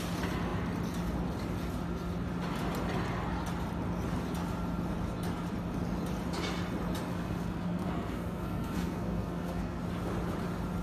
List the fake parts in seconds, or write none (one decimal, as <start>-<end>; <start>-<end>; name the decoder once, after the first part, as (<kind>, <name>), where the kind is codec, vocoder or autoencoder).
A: 7.1-9.8 (codec, SNAC)